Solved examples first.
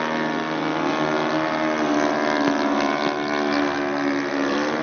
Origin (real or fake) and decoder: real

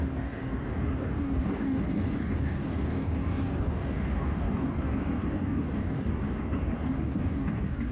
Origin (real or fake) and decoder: fake, codec, DAC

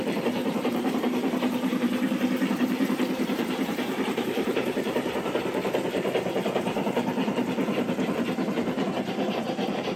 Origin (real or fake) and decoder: fake, vocoder, BigVGAN v2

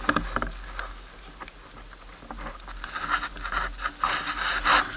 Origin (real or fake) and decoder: real